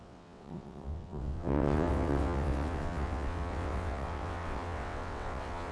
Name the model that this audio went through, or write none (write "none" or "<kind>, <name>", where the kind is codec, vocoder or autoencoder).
vocoder, WaveNeXt